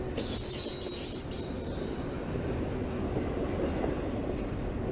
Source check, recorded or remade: recorded